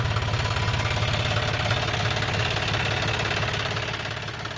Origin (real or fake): real